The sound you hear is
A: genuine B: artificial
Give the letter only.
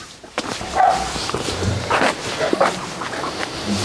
B